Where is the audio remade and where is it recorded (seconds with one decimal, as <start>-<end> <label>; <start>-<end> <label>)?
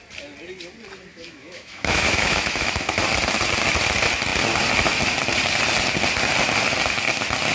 0.0-1.1 recorded; 1.1-3.0 remade; 3.0-7.5 recorded